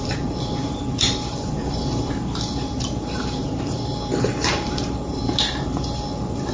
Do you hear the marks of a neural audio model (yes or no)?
yes